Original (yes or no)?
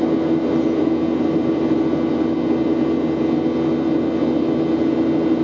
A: yes